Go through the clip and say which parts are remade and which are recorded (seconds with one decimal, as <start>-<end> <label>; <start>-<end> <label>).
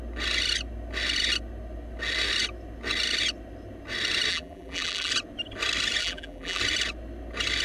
0.0-4.3 recorded; 4.3-5.1 remade; 5.1-6.0 recorded; 6.0-6.6 remade; 6.6-7.6 recorded